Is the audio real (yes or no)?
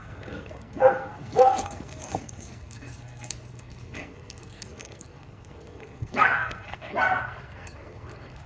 no